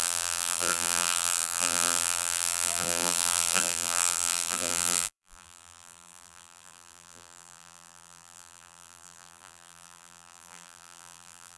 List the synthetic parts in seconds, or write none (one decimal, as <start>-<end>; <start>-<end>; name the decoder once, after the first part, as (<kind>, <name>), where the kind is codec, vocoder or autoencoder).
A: 0.0-11.6 (vocoder, BigVGAN v2)